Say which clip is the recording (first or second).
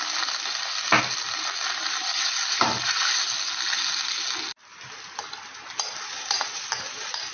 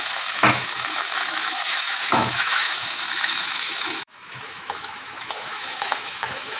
first